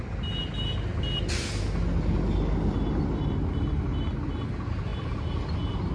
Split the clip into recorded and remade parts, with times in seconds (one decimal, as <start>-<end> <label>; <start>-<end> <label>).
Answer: 0.0-5.9 recorded